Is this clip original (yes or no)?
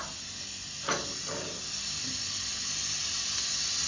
yes